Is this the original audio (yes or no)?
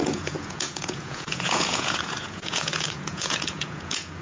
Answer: no